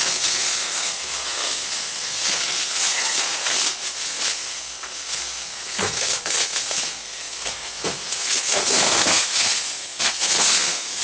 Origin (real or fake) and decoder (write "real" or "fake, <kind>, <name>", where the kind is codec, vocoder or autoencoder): fake, codec, SNAC